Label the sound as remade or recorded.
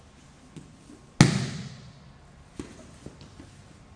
recorded